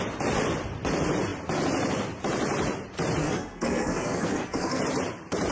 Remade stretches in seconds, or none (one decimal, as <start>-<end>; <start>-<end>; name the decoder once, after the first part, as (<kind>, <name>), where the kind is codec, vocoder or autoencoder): 3.2-4.8 (codec, SNAC)